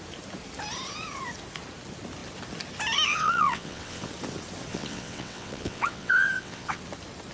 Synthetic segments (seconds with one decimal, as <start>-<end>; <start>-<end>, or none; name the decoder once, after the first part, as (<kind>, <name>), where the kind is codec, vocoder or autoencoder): 3.1-4.1 (vocoder, WaveNeXt); 4.7-6.8